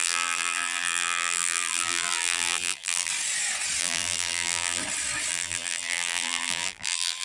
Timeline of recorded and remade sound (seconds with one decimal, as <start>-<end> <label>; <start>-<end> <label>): 0.0-3.1 remade; 3.1-3.8 recorded; 3.8-4.8 remade; 4.8-5.3 recorded; 5.3-7.2 remade